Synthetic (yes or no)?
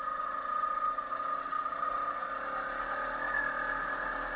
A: no